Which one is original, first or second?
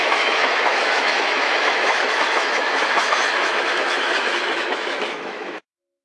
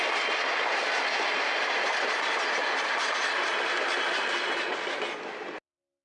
second